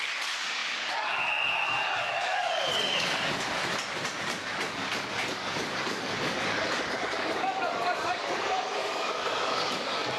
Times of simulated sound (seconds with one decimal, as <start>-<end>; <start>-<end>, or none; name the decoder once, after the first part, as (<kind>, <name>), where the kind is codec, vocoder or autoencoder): 0.0-3.6 (codec, DAC); 4.2-10.2